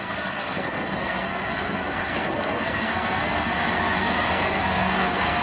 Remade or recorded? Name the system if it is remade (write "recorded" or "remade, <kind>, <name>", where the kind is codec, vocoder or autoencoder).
remade, codec, SNAC